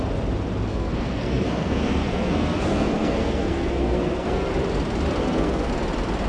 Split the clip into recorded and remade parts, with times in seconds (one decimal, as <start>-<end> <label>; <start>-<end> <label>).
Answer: 0.0-0.7 recorded; 0.7-4.5 remade; 4.5-5.2 recorded; 5.2-5.7 remade; 5.7-6.3 recorded